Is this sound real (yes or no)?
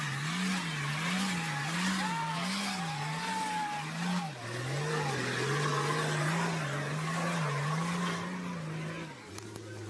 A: yes